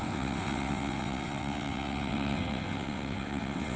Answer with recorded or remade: remade